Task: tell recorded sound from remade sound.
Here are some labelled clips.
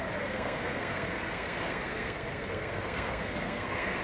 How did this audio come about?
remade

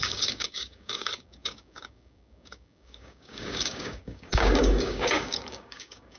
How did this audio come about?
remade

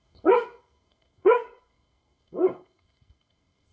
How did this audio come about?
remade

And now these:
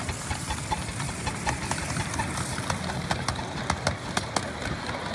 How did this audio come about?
recorded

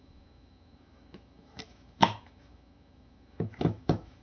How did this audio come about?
remade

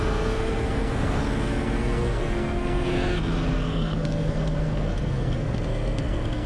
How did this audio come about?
remade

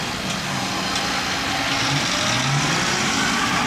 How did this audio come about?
recorded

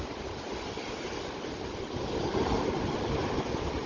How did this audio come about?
recorded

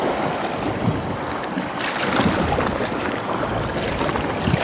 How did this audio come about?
remade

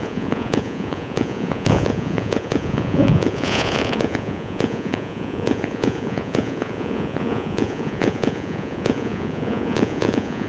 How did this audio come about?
remade